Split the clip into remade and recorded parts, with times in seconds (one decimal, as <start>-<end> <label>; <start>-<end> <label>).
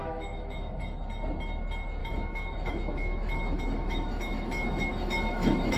0.0-0.8 remade; 0.8-2.0 recorded; 2.0-5.8 remade